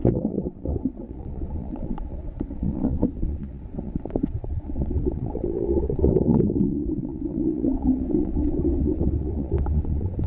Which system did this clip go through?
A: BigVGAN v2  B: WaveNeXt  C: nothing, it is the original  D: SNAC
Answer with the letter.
B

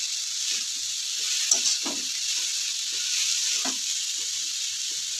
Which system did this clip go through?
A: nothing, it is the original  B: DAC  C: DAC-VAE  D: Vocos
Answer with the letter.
A